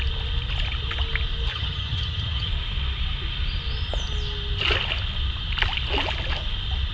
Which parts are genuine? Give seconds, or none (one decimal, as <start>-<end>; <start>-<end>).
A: 0.0-1.5; 2.5-6.9